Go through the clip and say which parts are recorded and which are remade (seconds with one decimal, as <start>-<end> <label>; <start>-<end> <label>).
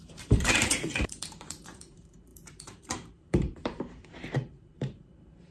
0.0-5.5 remade